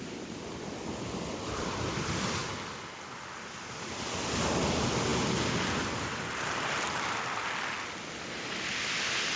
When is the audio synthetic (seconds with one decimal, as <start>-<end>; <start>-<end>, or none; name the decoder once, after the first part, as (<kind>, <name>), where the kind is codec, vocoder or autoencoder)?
none

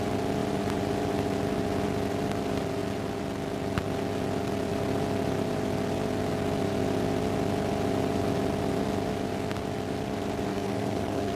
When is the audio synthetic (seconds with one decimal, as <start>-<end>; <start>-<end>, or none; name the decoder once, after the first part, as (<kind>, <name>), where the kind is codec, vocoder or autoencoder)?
10.5-11.4 (codec, SNAC)

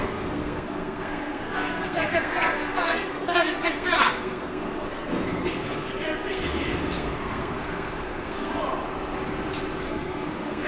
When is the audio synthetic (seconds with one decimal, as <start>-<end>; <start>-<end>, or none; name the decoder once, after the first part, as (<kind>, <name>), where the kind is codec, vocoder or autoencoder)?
0.0-8.6 (codec, SNAC); 9.8-10.7

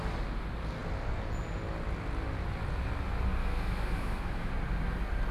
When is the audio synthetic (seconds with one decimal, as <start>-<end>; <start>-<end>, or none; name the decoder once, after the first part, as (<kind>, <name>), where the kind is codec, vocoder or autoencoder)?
3.4-4.5 (autoencoder, DAC-VAE)

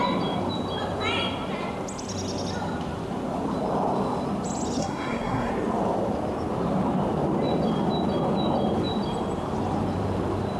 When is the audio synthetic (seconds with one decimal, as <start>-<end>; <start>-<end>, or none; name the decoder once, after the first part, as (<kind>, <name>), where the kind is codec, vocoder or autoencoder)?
4.8-5.5 (codec, SNAC)

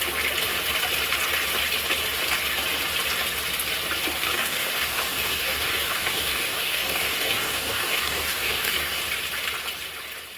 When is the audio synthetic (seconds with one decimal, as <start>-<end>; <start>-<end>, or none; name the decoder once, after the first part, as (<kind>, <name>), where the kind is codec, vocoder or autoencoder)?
4.2-9.0 (codec, DAC)

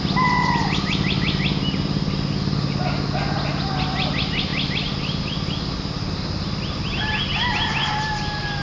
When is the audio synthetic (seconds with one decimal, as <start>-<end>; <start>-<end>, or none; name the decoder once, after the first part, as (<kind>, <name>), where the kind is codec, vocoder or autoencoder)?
none

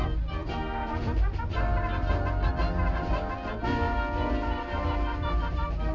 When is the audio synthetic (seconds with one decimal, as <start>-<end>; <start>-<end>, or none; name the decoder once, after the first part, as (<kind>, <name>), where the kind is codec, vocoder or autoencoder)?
0.4-1.2 (vocoder, BigVGAN v2)